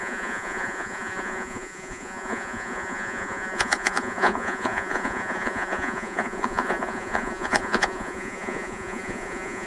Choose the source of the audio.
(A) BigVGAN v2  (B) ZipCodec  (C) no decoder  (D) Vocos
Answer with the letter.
D